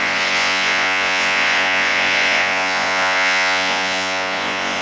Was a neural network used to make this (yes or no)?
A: yes